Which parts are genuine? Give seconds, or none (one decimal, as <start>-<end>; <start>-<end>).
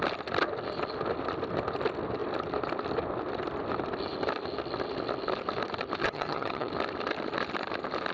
0.0-6.0; 6.7-8.1